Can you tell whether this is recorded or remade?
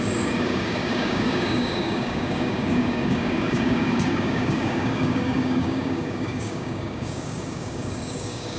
remade